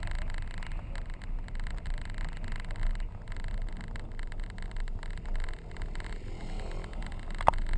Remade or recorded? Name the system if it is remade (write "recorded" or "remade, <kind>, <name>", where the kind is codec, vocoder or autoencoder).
recorded